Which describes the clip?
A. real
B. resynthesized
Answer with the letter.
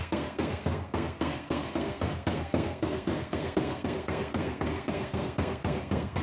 B